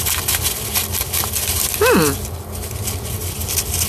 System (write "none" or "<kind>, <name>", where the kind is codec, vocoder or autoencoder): none